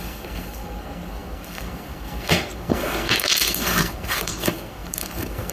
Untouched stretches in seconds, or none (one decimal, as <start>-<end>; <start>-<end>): none